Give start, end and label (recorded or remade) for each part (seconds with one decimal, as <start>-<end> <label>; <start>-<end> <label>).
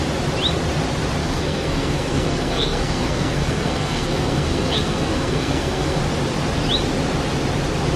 0.0-1.2 recorded; 1.2-6.0 remade; 6.0-8.0 recorded